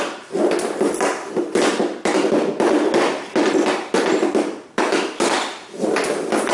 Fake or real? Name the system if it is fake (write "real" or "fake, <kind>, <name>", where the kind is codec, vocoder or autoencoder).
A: fake, vocoder, BigVGAN v2